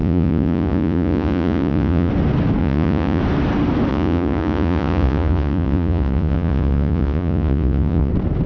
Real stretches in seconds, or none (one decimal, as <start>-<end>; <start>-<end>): 2.1-2.6; 3.2-3.9; 8.1-8.5